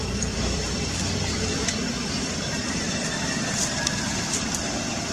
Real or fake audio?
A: fake